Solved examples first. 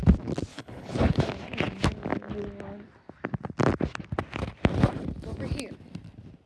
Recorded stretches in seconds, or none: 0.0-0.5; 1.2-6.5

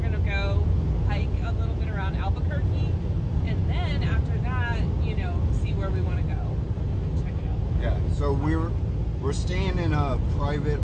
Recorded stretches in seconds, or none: 0.0-10.8

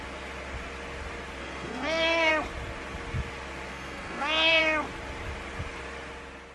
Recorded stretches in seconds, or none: 0.0-1.4; 2.3-3.7; 4.6-6.5

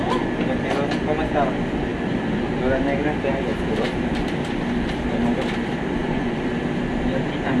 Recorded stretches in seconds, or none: 0.0-6.0; 6.5-7.6

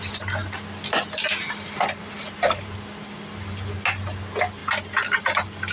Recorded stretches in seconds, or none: 0.0-5.7